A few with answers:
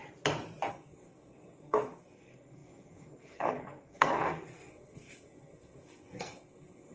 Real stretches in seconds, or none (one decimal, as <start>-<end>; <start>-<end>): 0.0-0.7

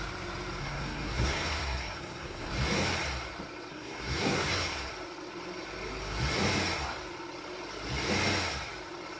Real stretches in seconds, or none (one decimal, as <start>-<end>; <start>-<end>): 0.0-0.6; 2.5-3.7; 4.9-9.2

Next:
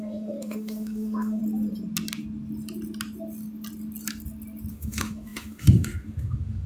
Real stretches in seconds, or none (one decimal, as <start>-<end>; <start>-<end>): 1.4-4.7

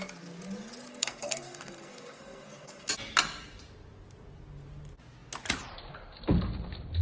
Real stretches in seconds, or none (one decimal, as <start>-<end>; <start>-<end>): 0.0-0.9; 2.9-7.0

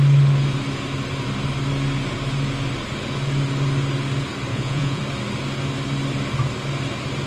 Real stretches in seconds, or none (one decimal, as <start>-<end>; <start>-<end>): 0.0-4.5; 5.0-7.3

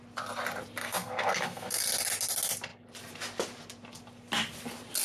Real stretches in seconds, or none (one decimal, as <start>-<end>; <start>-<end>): 0.0-0.8; 1.8-5.0